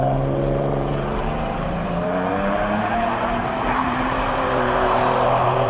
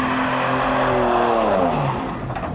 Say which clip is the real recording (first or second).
second